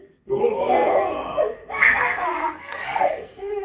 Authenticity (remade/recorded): remade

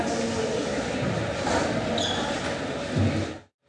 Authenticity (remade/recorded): recorded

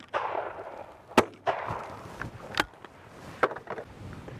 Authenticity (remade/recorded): recorded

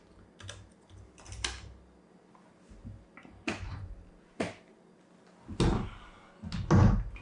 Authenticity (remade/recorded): recorded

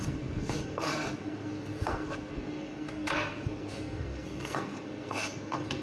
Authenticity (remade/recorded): remade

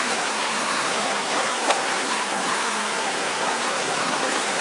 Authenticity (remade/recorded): remade